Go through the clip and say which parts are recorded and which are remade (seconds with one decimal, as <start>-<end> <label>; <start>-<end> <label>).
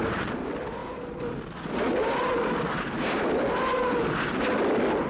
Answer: 0.0-5.1 recorded